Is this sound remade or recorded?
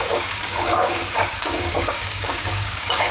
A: remade